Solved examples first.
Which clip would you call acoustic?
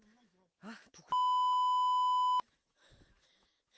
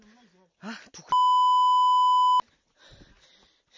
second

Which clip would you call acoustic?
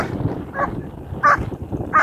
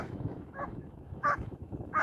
first